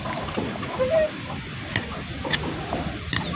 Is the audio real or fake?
real